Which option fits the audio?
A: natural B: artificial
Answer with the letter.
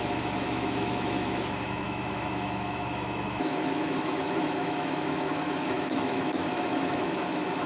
B